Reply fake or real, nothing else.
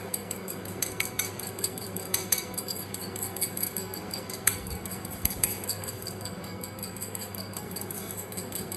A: fake